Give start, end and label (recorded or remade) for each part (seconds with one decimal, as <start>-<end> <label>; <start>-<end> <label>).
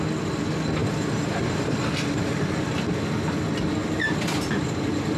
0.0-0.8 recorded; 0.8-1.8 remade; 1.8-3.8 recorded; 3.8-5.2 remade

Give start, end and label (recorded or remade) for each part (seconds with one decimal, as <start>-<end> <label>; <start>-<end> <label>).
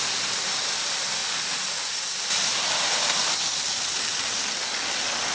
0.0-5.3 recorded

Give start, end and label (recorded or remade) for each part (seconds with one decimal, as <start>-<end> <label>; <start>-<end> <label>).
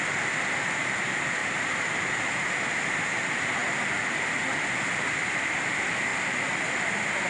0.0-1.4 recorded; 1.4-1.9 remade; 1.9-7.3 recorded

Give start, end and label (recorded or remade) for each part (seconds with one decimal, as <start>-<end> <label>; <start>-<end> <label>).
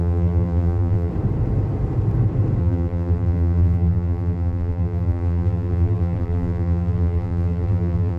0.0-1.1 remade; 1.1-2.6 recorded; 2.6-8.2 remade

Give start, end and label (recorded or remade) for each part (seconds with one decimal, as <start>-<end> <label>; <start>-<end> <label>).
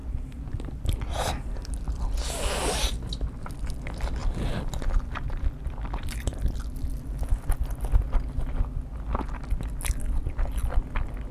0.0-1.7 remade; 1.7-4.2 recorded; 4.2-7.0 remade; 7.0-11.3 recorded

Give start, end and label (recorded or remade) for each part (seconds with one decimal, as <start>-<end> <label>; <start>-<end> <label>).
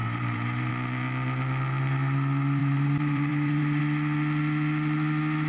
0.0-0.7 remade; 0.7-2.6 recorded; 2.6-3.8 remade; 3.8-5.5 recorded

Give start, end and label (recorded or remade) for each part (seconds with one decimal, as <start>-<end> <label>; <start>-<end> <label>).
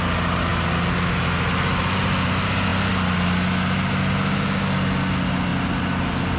0.0-6.4 recorded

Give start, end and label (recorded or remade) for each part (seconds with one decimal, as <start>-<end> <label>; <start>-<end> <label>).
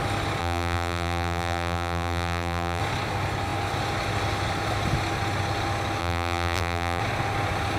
0.0-0.4 recorded; 0.4-2.8 remade; 2.8-6.0 recorded; 6.0-7.0 remade; 7.0-7.8 recorded